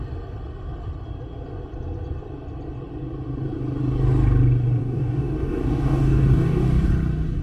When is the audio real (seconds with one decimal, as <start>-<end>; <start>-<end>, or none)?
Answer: 0.0-4.8; 6.9-7.4